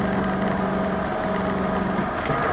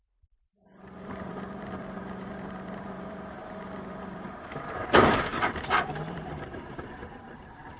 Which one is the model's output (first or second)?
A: second